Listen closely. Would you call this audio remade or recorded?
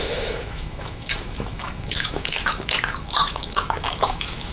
remade